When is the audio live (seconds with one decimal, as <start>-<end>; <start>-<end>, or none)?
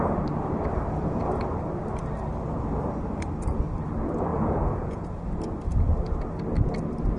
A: 0.0-4.3; 5.1-7.2